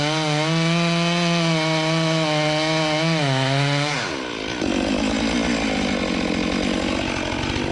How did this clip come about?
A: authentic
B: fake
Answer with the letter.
A